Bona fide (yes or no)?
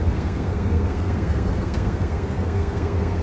no